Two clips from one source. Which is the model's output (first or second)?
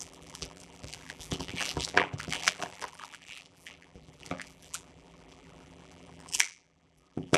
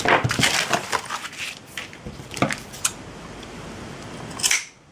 first